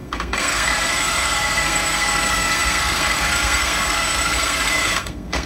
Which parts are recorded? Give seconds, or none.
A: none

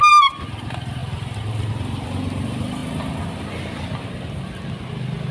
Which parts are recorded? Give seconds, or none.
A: 0.0-5.3

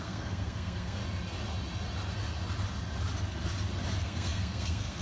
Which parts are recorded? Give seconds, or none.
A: 1.0-4.0

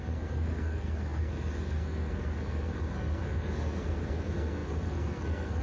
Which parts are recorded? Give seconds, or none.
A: none